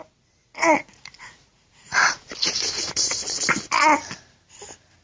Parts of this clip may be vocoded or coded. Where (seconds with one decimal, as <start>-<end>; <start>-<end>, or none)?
0.4-3.4